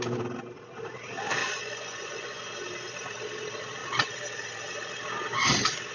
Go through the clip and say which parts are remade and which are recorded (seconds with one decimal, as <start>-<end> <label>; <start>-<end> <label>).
0.0-1.4 recorded; 1.4-2.5 remade; 2.5-5.9 recorded